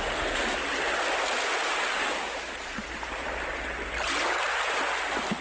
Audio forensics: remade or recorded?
recorded